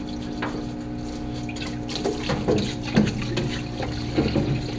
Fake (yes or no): no